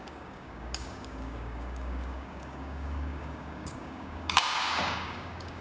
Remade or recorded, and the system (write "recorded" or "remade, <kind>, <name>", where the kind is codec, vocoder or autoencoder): remade, codec, DAC